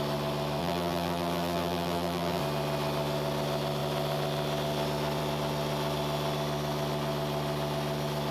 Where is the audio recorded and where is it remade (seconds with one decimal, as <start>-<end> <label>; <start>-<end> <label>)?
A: 0.0-0.6 recorded; 0.6-2.4 remade; 2.4-8.3 recorded